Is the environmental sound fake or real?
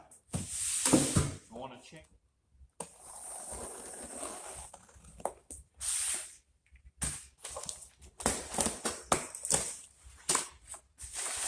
real